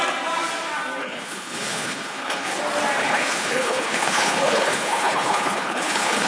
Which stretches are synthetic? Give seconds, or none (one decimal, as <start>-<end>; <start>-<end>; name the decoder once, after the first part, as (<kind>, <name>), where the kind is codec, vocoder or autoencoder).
1.0-2.6 (codec, HILCodec); 3.0-6.3